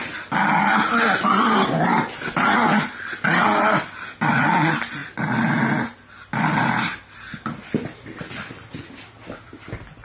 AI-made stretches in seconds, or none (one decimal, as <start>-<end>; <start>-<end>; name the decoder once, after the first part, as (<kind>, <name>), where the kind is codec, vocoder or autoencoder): none